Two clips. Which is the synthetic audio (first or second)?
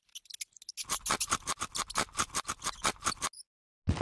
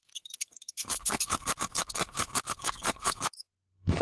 second